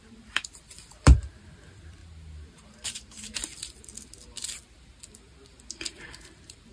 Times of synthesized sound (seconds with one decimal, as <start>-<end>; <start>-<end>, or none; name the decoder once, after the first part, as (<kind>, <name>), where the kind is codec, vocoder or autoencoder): 0.0-2.0 (vocoder, BigVGAN v2); 6.0-6.7